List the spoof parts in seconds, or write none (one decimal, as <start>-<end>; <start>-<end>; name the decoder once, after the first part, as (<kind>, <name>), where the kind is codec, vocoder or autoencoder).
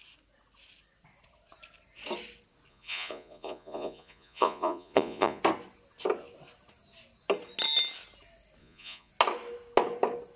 2.7-5.4 (vocoder, Vocos); 8.6-9.1